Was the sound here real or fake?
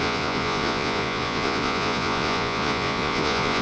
fake